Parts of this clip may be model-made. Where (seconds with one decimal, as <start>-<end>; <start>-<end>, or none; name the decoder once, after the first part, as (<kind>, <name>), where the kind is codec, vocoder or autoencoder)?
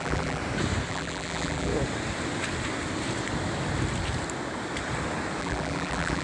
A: 0.0-0.4 (vocoder, BigVGAN v2); 0.9-1.7; 5.4-6.2